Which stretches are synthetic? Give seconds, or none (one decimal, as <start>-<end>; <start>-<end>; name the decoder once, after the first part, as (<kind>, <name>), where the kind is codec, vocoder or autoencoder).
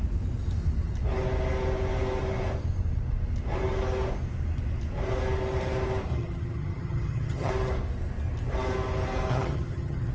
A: 6.1-7.5 (vocoder, HiFi-GAN); 9.3-10.1